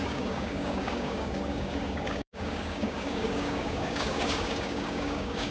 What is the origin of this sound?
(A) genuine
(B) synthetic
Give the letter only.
B